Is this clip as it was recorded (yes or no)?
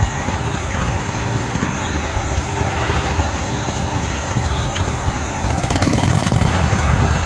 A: no